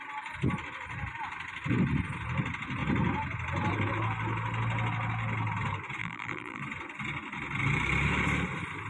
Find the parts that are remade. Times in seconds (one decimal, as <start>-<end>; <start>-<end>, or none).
6.0-6.6